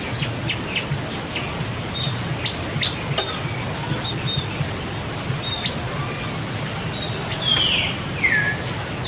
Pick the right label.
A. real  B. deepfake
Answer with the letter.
A